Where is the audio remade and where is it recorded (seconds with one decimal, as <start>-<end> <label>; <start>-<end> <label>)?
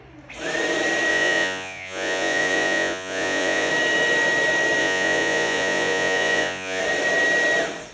0.0-1.1 recorded; 1.1-3.7 remade; 3.7-4.8 recorded; 4.8-6.8 remade; 6.8-7.9 recorded